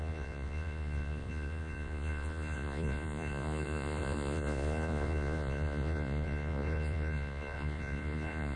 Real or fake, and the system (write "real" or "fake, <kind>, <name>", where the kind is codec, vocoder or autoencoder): fake, vocoder, Vocos